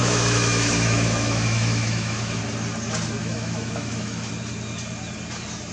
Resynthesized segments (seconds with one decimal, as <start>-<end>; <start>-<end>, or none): 0.0-2.4; 3.2-4.3

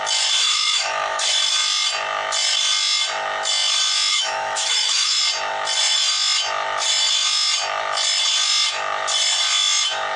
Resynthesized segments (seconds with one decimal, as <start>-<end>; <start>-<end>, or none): 0.4-1.3; 4.1-5.2

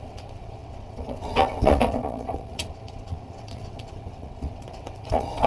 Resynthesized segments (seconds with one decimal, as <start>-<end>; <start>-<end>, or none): 0.0-5.5

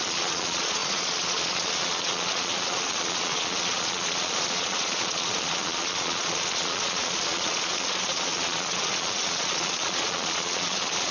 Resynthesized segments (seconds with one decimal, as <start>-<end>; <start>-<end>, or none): 0.0-11.1

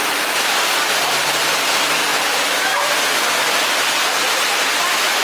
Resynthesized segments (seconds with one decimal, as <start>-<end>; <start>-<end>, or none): none

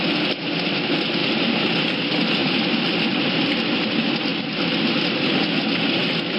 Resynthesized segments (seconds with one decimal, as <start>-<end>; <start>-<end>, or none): 1.2-1.8; 2.4-3.3

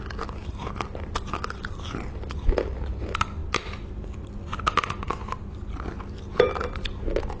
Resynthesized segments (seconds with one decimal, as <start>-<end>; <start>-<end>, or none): none

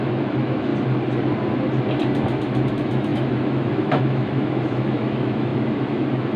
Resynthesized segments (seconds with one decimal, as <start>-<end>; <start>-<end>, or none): 0.0-0.7; 2.7-6.4